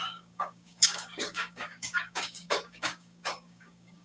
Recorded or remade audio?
remade